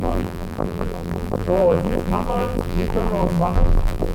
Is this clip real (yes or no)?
no